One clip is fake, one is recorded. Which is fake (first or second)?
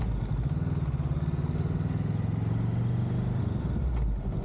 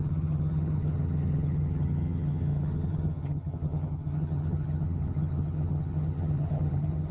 second